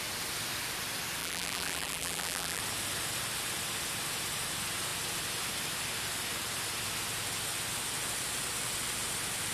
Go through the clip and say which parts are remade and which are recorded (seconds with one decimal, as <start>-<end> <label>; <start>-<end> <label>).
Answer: 0.0-1.2 recorded; 1.2-2.6 remade; 2.6-9.5 recorded

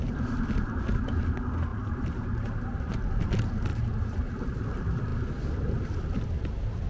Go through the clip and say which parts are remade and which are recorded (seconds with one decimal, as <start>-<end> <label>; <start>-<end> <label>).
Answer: 0.0-1.7 recorded; 1.7-2.9 remade; 2.9-3.7 recorded; 3.7-4.3 remade; 4.3-6.9 recorded

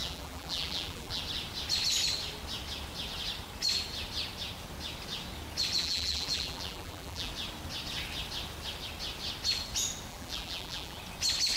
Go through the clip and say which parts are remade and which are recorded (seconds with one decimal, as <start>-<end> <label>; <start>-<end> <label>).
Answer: 0.0-1.2 remade; 1.2-5.8 recorded; 5.8-7.3 remade; 7.3-10.1 recorded; 10.1-11.0 remade; 11.0-11.6 recorded

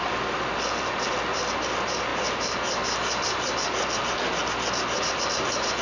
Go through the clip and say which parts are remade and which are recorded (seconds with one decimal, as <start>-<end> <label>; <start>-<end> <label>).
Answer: 0.0-5.8 recorded

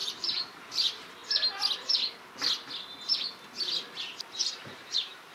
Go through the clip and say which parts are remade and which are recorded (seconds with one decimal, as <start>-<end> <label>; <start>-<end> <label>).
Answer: 0.0-1.2 remade; 1.2-4.4 recorded; 4.4-5.3 remade